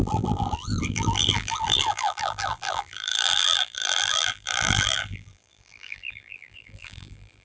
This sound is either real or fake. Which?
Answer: fake